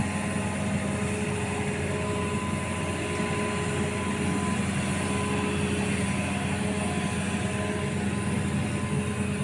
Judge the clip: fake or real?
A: real